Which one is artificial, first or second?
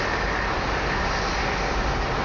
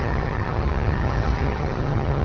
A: second